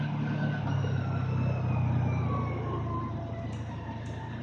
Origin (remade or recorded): recorded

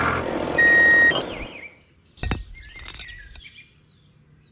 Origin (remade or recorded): recorded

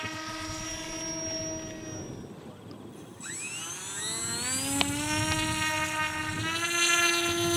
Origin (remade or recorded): recorded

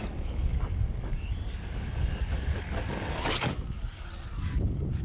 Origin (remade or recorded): remade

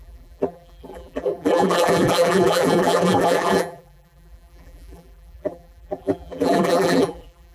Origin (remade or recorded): remade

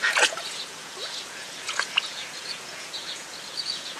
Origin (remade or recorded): remade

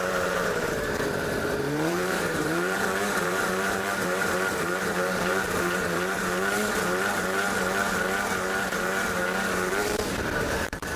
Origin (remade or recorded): remade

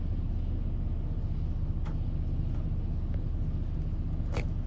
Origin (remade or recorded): recorded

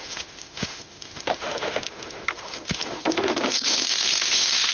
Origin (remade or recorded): remade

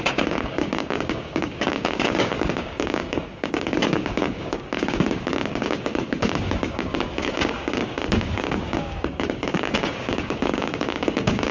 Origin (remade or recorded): remade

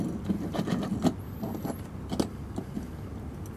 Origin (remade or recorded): recorded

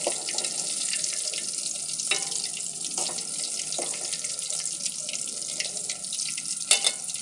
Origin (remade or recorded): recorded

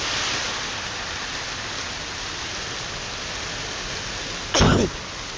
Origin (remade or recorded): recorded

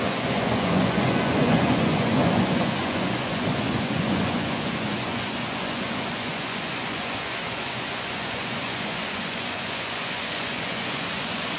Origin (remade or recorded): remade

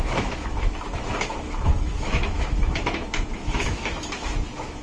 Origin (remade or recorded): remade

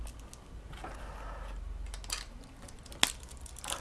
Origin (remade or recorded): recorded